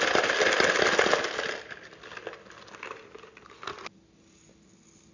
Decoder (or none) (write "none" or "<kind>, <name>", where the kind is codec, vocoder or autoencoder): none